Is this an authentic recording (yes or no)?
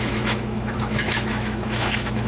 no